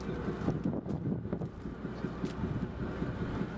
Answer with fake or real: real